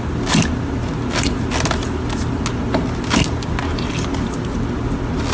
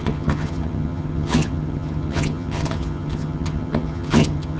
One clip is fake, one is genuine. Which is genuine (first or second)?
first